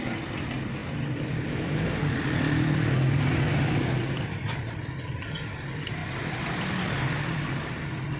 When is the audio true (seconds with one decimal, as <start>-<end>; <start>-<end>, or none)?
0.0-8.2